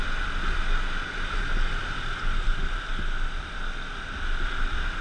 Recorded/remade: recorded